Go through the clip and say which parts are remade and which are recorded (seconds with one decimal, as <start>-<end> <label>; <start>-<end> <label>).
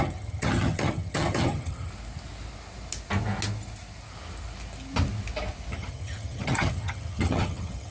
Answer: 0.0-1.9 remade; 1.9-5.7 recorded; 5.7-7.9 remade